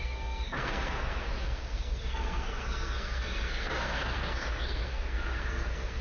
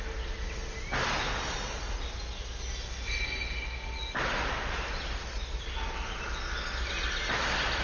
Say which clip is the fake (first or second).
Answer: first